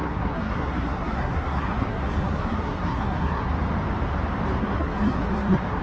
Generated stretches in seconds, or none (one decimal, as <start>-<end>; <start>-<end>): 0.0-3.5; 4.6-5.8